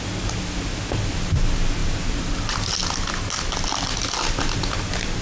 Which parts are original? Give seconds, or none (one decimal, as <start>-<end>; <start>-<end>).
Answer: 0.0-5.2